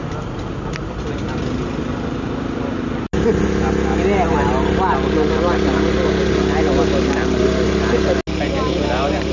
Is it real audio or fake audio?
real